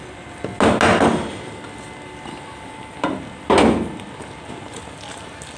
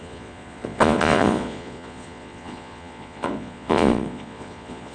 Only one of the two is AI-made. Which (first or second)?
second